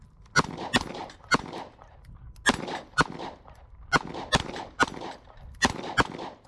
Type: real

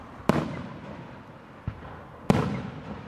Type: real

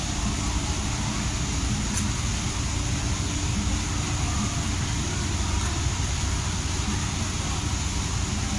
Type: real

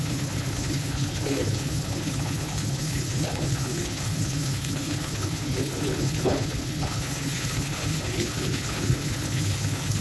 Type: fake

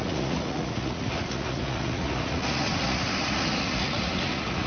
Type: fake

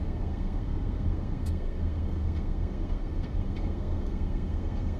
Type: fake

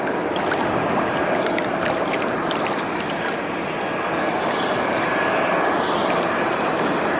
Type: real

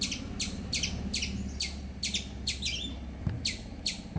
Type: real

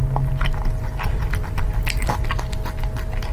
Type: real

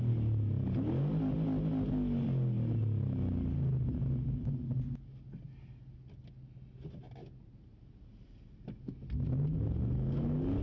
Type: real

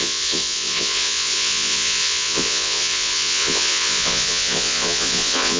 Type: fake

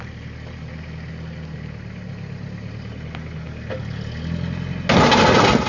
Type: real